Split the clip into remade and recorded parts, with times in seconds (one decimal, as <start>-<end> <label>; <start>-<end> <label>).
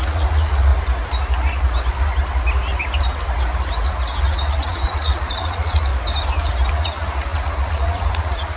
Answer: 0.0-0.7 remade; 0.7-4.2 recorded; 4.2-5.9 remade; 5.9-6.7 recorded; 6.7-8.6 remade